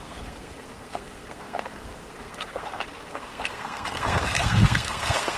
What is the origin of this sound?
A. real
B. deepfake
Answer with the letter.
B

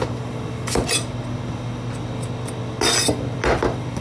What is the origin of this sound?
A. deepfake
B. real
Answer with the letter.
B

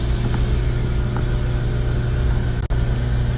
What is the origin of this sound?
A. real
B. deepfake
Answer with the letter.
A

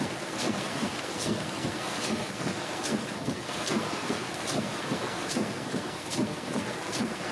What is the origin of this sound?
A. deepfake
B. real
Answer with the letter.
A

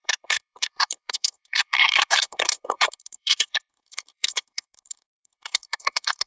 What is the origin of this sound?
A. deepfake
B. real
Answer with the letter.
A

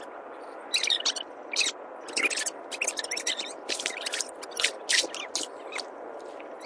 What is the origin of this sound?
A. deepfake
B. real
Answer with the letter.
B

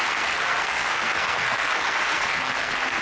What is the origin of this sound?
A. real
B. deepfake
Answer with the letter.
B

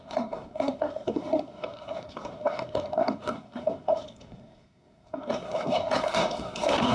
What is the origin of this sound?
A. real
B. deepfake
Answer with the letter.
B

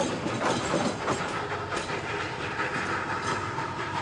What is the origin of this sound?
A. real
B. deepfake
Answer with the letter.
A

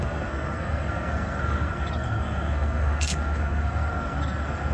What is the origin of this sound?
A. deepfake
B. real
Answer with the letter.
A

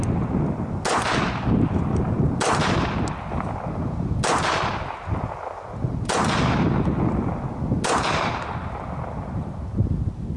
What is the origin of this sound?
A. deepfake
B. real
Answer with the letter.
B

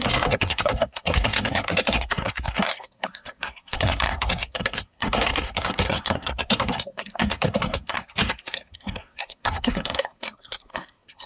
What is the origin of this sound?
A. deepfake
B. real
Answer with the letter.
A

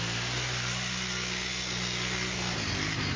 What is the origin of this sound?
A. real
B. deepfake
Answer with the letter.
A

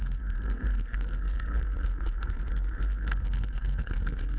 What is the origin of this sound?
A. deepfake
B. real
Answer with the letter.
A